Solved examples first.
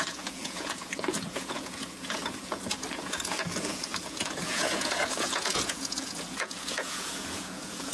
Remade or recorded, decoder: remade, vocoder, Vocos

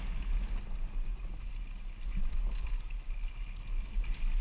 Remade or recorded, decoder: recorded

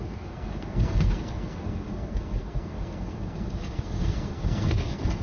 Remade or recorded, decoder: remade, codec, SNAC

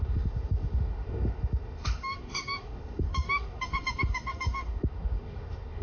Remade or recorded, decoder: remade, autoencoder, DAC-VAE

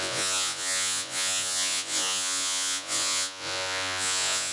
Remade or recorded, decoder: remade, vocoder, Vocos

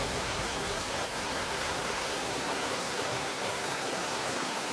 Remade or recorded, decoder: remade, codec, SNAC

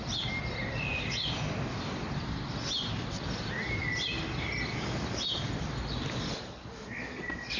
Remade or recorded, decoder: recorded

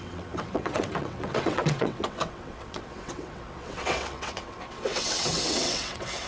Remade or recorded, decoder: remade, vocoder, WaveNeXt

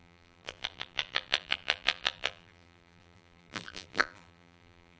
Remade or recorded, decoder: remade, vocoder, BigVGAN v2